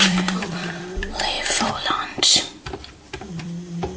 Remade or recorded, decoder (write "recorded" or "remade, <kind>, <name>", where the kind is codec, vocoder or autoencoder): remade, vocoder, BigVGAN v2